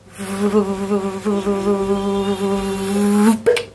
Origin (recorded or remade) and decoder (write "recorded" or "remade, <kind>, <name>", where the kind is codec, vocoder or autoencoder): recorded